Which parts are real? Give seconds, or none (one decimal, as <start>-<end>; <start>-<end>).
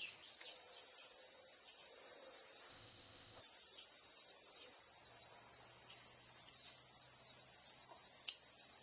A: 0.0-2.7; 3.4-8.8